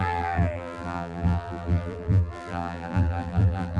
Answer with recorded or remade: remade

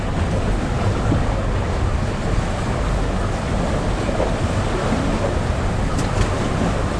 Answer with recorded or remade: recorded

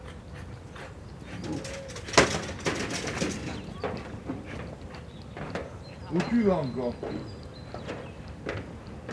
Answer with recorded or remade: recorded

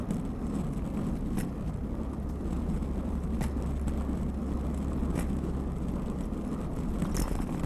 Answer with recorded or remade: recorded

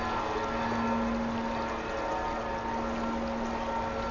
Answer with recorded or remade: recorded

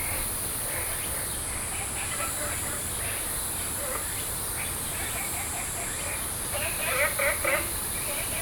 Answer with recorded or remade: remade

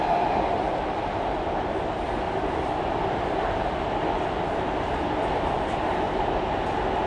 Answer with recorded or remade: recorded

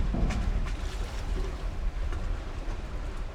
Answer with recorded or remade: remade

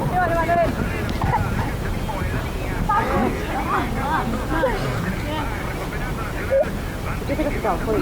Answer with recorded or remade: recorded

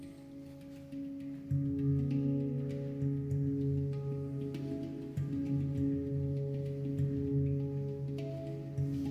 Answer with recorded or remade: recorded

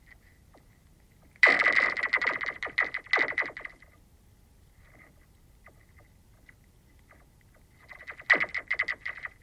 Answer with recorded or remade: recorded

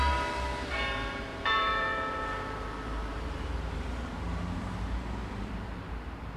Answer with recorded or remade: remade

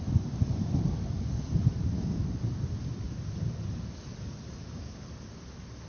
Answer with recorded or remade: recorded